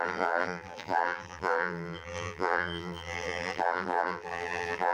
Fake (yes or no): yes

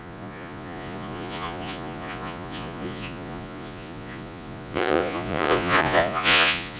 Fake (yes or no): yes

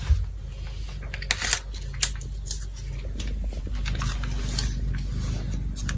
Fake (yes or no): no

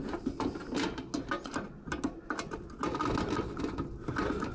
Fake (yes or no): no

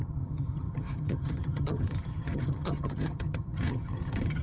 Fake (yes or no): yes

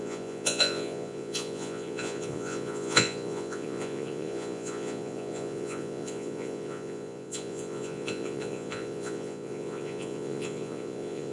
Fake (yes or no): yes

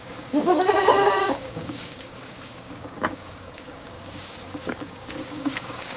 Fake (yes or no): yes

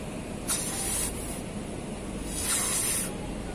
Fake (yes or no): no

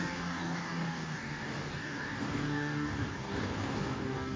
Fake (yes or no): yes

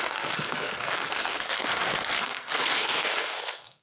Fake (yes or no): yes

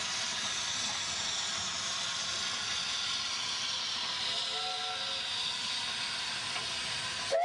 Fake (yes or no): no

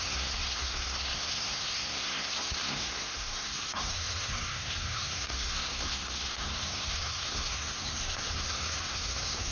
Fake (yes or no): yes